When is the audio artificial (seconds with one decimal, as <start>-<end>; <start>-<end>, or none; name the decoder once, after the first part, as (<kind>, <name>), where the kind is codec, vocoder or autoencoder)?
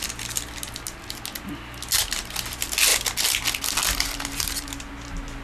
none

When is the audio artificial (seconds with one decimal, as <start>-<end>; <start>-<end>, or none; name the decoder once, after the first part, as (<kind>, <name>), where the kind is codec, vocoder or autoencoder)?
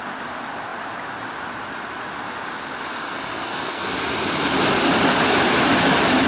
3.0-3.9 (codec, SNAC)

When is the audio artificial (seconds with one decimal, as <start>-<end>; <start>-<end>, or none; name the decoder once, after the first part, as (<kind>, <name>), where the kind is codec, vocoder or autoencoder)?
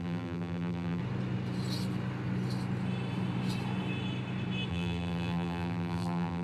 0.0-1.0 (vocoder, BigVGAN v2); 4.7-6.4